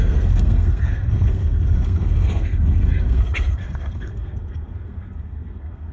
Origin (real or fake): fake